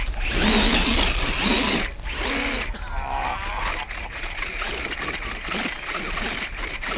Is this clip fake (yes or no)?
no